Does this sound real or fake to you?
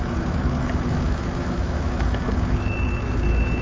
fake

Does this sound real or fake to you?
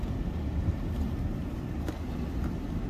real